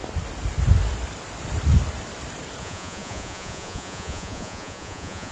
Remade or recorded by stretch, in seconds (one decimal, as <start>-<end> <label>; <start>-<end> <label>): 0.0-2.6 recorded; 2.6-5.3 remade